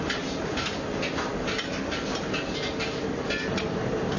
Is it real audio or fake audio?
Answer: real